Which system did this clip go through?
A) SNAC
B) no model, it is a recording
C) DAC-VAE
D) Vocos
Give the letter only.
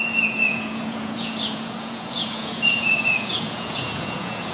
D